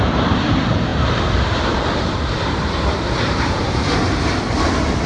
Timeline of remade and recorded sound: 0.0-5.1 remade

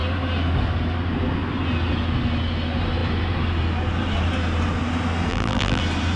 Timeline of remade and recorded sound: 0.0-5.3 recorded; 5.3-5.8 remade; 5.8-6.2 recorded

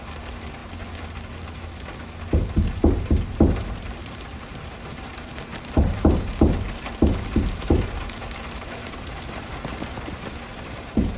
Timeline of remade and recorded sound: 0.0-0.6 remade; 0.6-2.5 recorded; 2.5-4.3 remade; 4.3-4.9 recorded; 4.9-11.2 remade

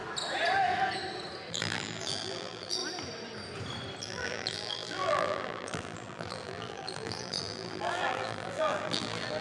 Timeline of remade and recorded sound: 0.0-1.5 recorded; 1.5-2.8 remade; 2.8-4.0 recorded; 4.0-9.4 remade

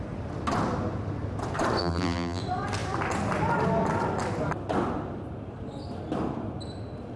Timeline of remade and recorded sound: 0.0-1.8 recorded; 1.8-2.4 remade; 2.4-7.2 recorded

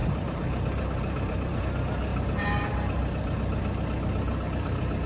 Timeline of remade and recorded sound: 0.0-1.6 remade; 1.6-5.1 recorded

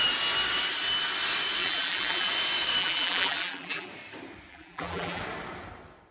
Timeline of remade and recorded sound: 0.0-1.6 recorded; 1.6-2.3 remade; 2.3-2.8 recorded; 2.8-3.9 remade; 3.9-4.5 recorded; 4.5-5.2 remade; 5.2-6.1 recorded

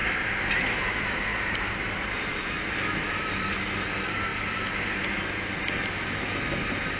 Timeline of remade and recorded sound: 0.0-1.3 recorded; 1.3-2.7 remade; 2.7-7.0 recorded